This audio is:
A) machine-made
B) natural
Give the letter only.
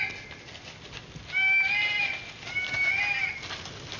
B